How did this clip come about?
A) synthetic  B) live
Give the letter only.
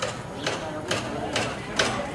B